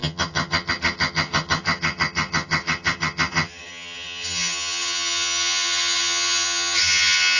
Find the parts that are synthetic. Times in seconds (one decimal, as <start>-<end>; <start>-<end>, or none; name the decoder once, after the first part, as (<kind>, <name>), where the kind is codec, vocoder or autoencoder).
0.0-7.4 (vocoder, HiFi-GAN)